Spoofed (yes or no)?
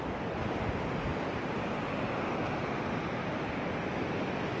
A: no